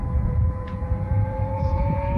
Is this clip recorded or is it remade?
remade